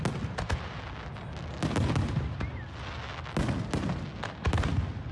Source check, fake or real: real